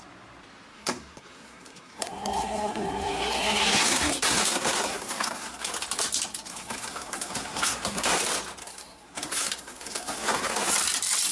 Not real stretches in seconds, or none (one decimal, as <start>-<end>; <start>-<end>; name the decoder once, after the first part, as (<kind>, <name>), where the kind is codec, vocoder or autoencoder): 0.7-5.7 (codec, SNAC); 6.5-8.2; 8.6-10.7